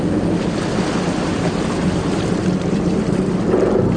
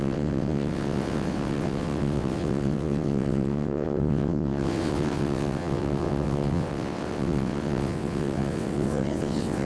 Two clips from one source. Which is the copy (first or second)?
second